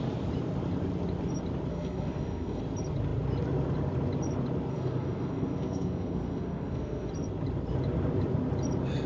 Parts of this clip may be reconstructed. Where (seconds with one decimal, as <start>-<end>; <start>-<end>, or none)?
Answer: 1.7-2.6; 4.7-7.1